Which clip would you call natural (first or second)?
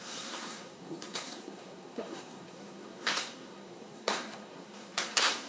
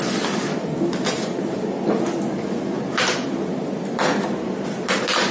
second